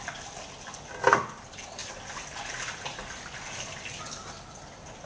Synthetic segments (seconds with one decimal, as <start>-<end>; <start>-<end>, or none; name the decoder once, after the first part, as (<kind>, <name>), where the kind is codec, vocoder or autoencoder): none